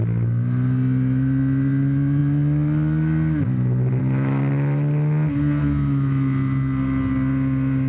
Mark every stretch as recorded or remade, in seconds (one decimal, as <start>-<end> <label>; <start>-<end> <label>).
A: 0.0-7.9 recorded